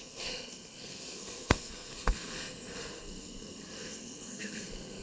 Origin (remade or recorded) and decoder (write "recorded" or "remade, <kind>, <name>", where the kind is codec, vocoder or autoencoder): remade, codec, SNAC